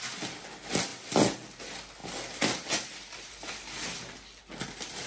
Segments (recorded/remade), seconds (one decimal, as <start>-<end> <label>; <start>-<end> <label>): 0.0-5.1 recorded